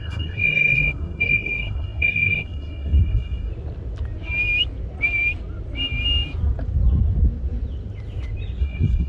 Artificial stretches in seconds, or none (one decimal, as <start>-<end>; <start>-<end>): 0.0-3.5; 8.6-9.1